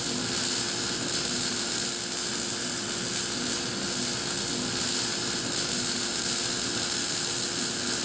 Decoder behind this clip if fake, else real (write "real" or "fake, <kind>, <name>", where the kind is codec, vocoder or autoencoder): real